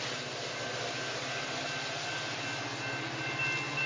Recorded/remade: recorded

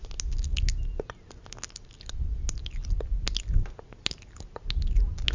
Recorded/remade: recorded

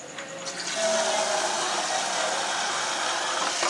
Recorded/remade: recorded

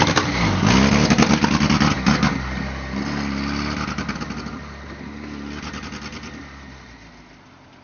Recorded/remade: recorded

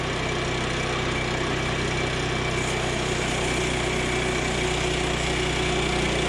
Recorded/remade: recorded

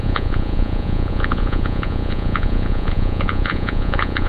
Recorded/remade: remade